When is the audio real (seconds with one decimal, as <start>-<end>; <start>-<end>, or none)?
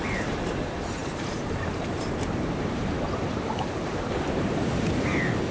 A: none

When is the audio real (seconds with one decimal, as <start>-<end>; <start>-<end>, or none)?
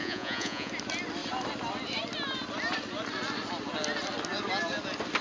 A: 0.7-5.2